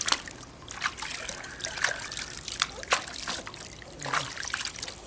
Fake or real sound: real